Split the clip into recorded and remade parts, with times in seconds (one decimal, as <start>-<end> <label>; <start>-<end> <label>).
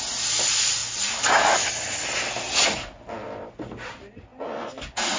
0.0-5.2 recorded